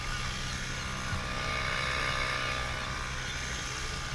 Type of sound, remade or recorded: recorded